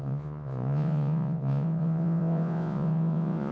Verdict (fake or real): fake